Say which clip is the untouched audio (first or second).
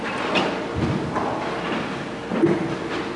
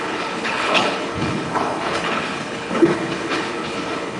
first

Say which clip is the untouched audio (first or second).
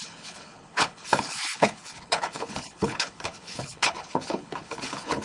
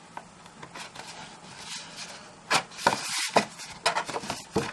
second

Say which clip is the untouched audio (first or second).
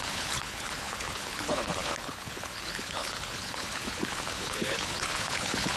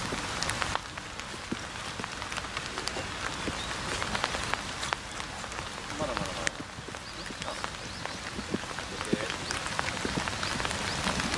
second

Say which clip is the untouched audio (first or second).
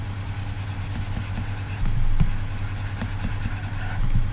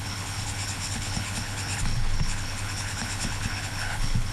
first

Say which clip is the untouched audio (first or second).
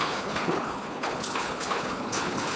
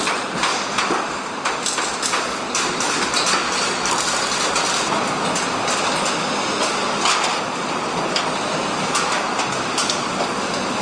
second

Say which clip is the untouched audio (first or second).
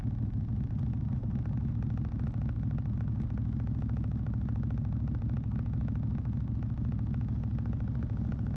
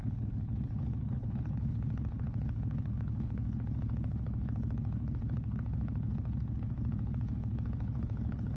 first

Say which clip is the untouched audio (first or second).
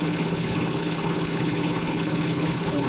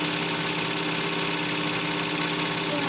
second